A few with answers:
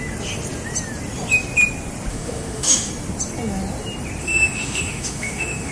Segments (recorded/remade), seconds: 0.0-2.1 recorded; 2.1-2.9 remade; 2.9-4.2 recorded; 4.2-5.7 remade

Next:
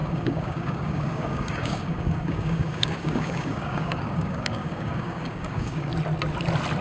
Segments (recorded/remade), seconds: 0.0-5.9 remade; 5.9-6.8 recorded